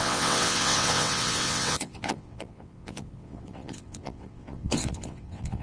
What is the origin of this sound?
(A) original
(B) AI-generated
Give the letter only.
B